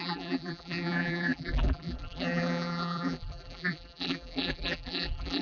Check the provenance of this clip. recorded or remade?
remade